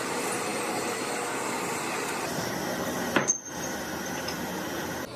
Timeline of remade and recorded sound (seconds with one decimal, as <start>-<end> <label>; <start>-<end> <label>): 0.0-5.2 recorded